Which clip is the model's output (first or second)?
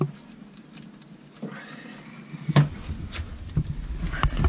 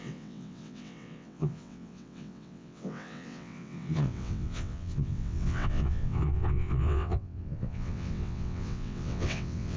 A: second